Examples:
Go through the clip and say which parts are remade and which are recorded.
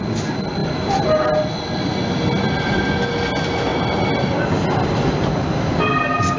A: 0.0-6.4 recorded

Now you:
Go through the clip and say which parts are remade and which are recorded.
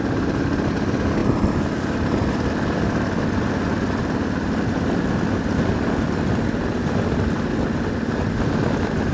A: 0.0-9.1 recorded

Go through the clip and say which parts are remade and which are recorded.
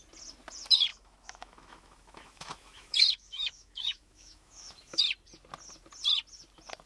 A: 0.0-0.9 recorded; 0.9-5.0 remade; 5.0-6.9 recorded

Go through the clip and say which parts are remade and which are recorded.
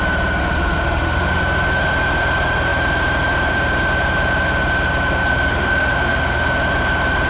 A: 0.0-0.4 recorded; 0.4-1.4 remade; 1.4-5.3 recorded; 5.3-6.5 remade; 6.5-7.3 recorded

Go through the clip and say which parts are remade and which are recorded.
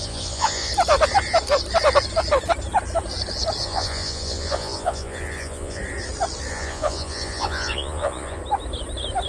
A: 0.0-0.7 remade; 0.7-3.6 recorded; 3.6-5.8 remade; 5.8-6.5 recorded; 6.5-8.4 remade; 8.4-9.3 recorded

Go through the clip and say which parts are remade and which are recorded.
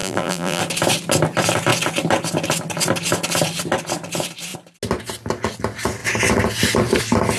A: 0.0-0.6 remade; 0.6-7.4 recorded